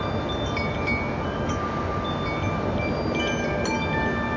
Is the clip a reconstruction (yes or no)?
no